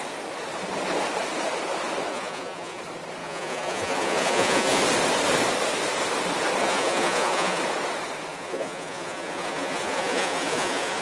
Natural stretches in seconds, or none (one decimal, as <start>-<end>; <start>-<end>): 0.0-2.1; 2.8-3.2; 4.8-6.6; 7.6-8.3